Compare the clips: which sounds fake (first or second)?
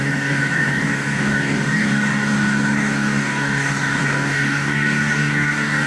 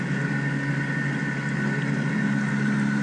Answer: first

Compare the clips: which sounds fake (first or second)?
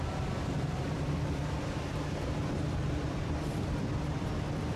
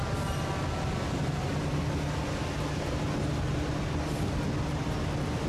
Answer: first